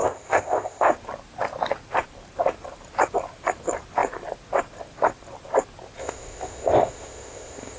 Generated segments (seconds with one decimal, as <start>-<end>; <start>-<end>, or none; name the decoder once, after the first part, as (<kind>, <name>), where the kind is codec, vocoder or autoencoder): 0.0-0.9 (codec, ZipCodec); 6.0-7.8